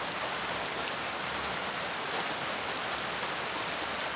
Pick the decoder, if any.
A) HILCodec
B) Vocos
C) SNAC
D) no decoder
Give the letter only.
D